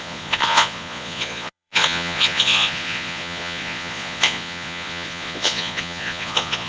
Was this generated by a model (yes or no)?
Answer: yes